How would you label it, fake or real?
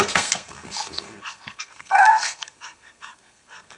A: fake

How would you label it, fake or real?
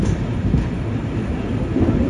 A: real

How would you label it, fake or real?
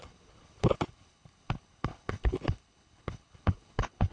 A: fake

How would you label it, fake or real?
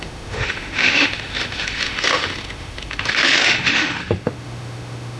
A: fake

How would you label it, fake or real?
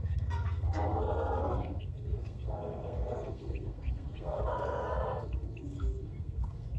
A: fake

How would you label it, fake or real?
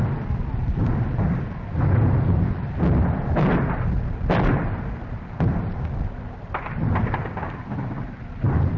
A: real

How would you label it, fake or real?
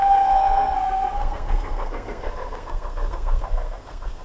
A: fake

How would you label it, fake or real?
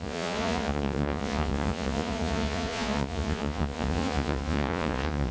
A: fake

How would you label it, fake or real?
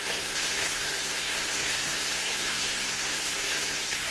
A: fake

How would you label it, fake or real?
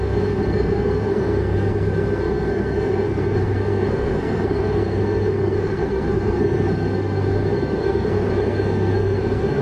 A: fake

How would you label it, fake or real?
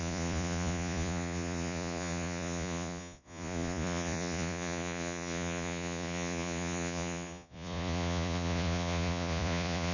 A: fake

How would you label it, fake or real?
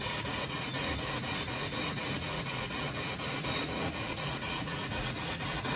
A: fake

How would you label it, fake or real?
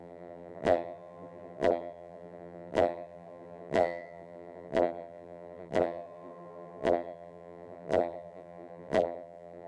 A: fake